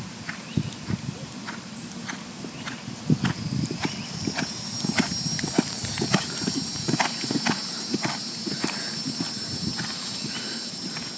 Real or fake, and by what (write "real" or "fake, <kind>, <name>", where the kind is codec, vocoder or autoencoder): real